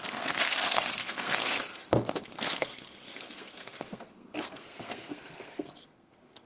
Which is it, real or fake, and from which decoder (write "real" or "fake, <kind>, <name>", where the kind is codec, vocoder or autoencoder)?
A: fake, codec, SNAC